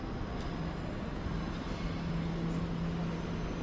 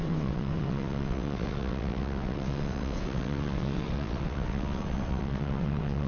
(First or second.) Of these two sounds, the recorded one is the first